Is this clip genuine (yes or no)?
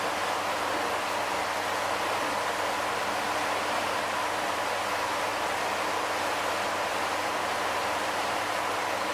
yes